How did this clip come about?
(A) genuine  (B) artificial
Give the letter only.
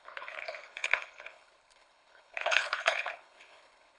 B